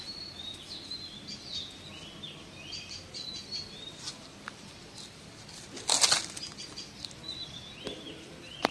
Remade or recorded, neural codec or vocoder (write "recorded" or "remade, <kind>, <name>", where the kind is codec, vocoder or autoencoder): recorded